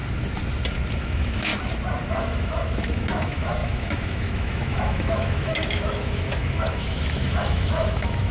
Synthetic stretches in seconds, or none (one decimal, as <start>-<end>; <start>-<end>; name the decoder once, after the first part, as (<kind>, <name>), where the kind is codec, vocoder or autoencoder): 0.9-1.5 (autoencoder, DAC-VAE); 2.1-8.3